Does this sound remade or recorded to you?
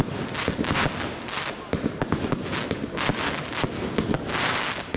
recorded